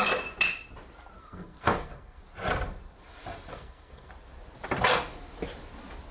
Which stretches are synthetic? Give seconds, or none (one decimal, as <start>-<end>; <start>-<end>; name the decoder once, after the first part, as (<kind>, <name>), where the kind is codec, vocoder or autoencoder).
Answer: 1.2-2.2 (codec, SNAC); 3.5-4.1